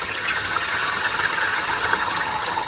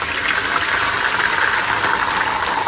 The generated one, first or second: first